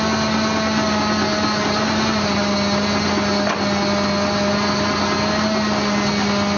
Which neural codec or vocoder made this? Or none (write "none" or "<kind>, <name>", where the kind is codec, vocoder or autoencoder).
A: none